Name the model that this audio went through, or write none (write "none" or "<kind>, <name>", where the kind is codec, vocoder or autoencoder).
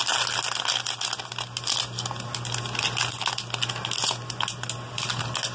none